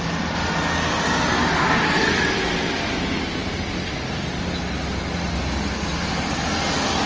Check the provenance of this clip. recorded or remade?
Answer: recorded